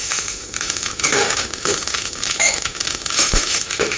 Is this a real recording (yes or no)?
no